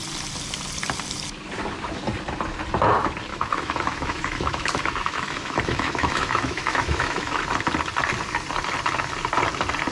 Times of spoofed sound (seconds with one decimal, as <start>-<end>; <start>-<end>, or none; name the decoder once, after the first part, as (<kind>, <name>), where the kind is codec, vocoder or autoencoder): 3.3-7.4 (autoencoder, DAC-VAE)